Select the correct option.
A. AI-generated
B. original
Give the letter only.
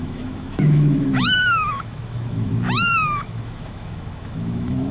A